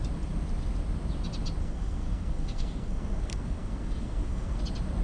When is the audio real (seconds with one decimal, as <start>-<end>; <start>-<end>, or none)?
0.0-1.6; 4.6-5.0